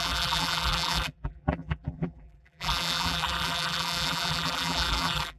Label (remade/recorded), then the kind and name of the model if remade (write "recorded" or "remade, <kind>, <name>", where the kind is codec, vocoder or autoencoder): remade, vocoder, BigVGAN v2